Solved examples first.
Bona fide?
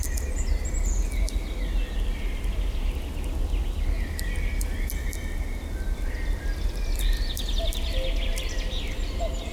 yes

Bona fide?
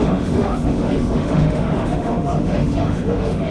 no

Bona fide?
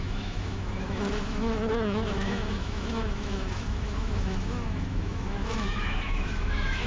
no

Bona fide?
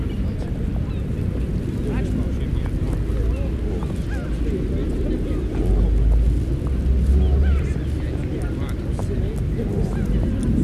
yes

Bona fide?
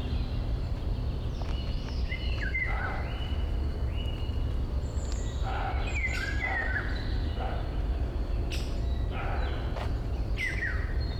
yes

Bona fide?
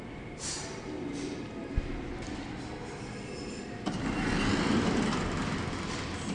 yes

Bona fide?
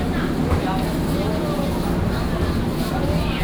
yes